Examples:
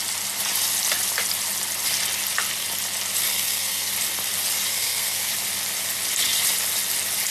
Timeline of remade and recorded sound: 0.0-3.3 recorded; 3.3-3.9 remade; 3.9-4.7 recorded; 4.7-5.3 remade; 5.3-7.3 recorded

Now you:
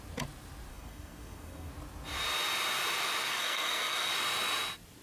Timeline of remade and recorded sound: 0.0-0.7 recorded; 0.7-1.7 remade; 1.7-3.3 recorded; 3.3-4.1 remade; 4.1-5.0 recorded

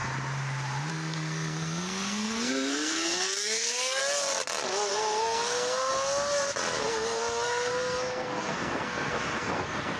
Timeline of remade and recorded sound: 0.0-0.9 recorded; 0.9-4.0 remade; 4.0-4.9 recorded; 4.9-5.9 remade; 5.9-6.9 recorded; 6.9-10.0 remade

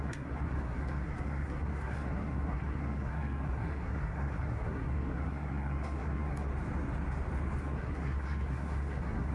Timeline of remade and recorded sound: 0.0-6.5 remade; 6.5-7.6 recorded; 7.6-9.3 remade